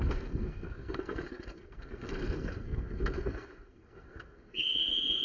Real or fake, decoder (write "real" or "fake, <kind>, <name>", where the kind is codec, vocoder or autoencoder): fake, codec, SNAC